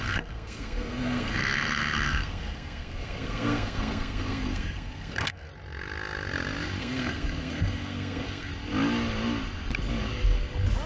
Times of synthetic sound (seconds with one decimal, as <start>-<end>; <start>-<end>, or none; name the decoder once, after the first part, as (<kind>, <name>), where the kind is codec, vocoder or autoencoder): 0.0-5.5 (codec, SNAC); 6.8-8.5